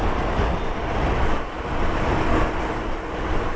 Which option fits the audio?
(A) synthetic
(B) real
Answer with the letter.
B